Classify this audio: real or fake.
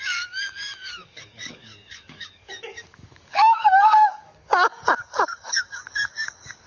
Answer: fake